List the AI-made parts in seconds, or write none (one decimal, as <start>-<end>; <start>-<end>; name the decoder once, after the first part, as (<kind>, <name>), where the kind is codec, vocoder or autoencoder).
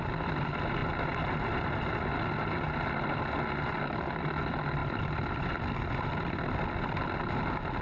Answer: none